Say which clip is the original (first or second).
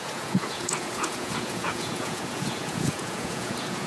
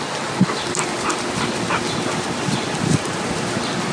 second